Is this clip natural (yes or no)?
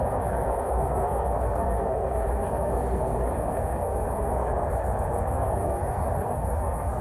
no